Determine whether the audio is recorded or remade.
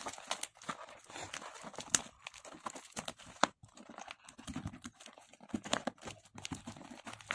recorded